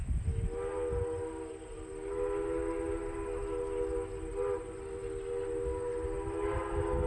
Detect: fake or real real